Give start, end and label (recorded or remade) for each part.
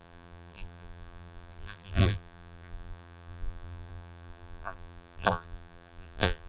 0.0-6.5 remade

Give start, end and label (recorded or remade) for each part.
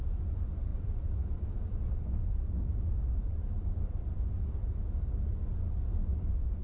0.0-0.7 recorded; 0.7-4.7 remade; 4.7-5.3 recorded; 5.3-5.8 remade; 5.8-6.6 recorded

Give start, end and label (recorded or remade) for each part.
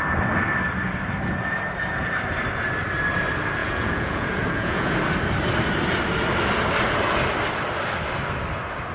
0.0-3.6 recorded; 3.6-5.0 remade; 5.0-8.9 recorded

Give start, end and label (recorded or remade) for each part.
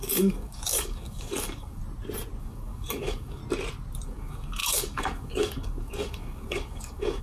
0.0-1.8 remade; 1.8-2.4 recorded; 2.4-3.4 remade; 3.4-4.0 recorded; 4.0-7.2 remade